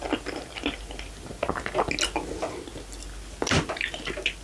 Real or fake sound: real